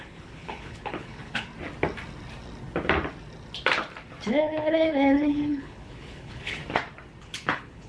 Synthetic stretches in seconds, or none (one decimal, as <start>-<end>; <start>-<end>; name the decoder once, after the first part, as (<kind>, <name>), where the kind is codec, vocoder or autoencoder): 0.0-1.5 (codec, HILCodec); 4.3-6.6; 7.2-7.9